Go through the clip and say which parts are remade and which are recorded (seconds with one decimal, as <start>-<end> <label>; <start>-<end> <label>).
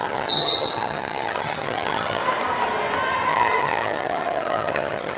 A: 0.0-2.2 remade; 2.2-3.3 recorded; 3.3-5.2 remade